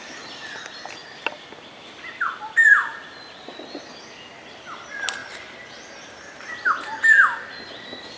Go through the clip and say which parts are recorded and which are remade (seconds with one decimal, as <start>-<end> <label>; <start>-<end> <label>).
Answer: 0.0-8.2 recorded